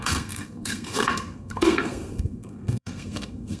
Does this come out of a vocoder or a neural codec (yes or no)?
yes